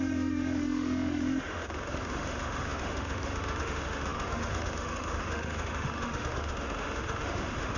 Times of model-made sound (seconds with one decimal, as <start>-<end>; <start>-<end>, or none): 0.0-7.8

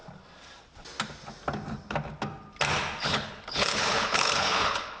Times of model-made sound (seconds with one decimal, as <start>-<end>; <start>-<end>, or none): 3.0-5.0